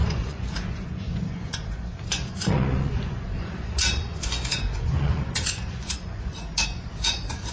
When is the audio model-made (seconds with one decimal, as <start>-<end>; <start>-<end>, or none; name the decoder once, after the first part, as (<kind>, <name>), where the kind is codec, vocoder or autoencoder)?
0.0-7.5 (vocoder, Vocos)